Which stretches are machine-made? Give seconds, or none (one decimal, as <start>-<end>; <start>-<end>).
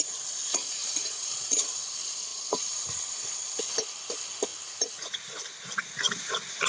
0.8-1.8; 2.3-3.6